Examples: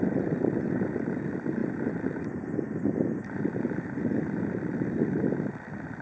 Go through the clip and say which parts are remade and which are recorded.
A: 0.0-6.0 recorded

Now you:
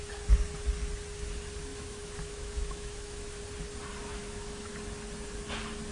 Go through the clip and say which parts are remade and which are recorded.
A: 0.0-1.7 recorded; 1.7-3.4 remade; 3.4-4.0 recorded; 4.0-4.7 remade; 4.7-5.9 recorded

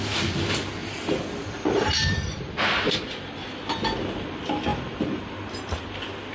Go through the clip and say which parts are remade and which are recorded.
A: 0.0-0.8 recorded; 0.8-2.4 remade; 2.4-4.7 recorded; 4.7-5.3 remade; 5.3-6.3 recorded

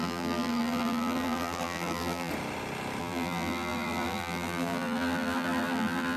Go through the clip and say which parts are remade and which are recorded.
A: 0.0-2.3 remade; 2.3-3.0 recorded; 3.0-6.2 remade

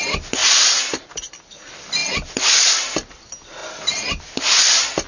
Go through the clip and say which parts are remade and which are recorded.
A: 0.0-0.4 recorded; 0.4-1.1 remade; 1.1-2.0 recorded; 2.0-3.1 remade; 3.1-3.6 recorded; 3.6-4.2 remade; 4.2-5.1 recorded